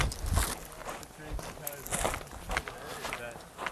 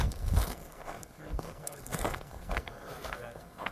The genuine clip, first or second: first